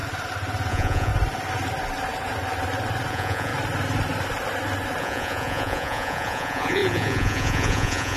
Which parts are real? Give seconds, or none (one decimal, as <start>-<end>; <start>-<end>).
0.0-0.7; 1.1-3.1; 3.5-5.0